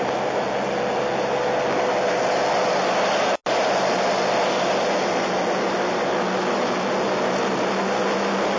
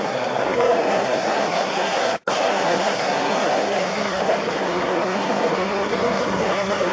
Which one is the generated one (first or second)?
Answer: second